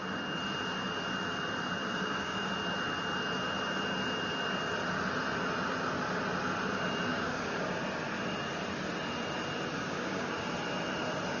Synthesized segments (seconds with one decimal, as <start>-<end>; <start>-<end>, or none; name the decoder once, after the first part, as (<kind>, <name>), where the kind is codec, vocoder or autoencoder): 1.8-2.5 (codec, DAC); 7.1-7.8; 9.7-10.3